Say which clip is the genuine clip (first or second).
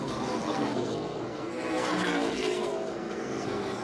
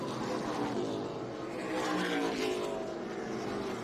second